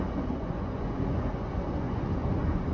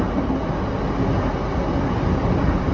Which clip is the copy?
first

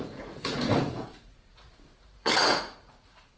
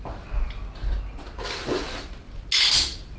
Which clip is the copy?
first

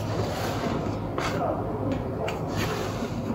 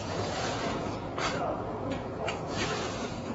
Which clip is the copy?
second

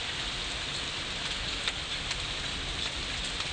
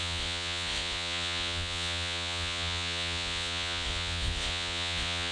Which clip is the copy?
second